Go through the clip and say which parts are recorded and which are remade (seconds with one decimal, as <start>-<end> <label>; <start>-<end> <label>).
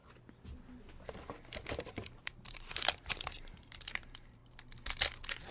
0.0-1.9 recorded; 1.9-4.4 remade; 4.4-5.5 recorded